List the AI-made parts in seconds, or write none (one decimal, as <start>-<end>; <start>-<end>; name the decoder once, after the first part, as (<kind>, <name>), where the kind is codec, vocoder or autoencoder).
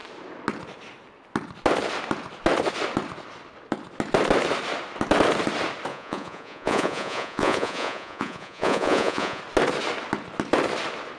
5.9-9.4 (vocoder, Vocos)